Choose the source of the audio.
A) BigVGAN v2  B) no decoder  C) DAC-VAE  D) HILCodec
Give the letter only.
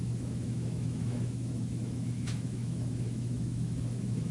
C